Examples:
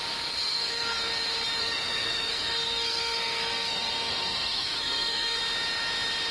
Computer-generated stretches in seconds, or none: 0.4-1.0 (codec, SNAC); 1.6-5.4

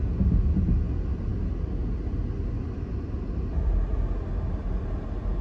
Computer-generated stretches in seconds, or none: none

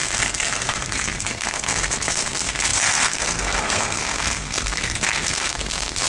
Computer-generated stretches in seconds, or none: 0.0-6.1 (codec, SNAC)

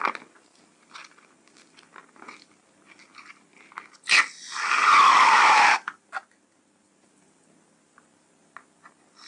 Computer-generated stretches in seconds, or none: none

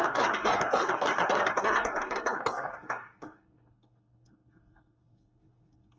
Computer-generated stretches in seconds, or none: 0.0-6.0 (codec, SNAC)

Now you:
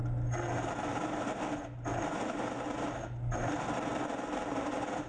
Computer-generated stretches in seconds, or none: none

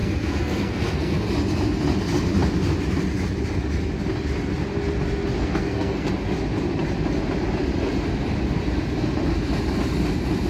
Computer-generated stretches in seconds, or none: 0.0-1.2 (codec, SNAC); 5.4-6.1

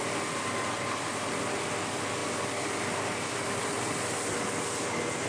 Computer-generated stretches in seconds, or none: none